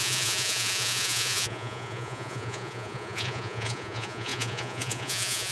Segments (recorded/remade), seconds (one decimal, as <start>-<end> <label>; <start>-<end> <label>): 0.0-5.5 remade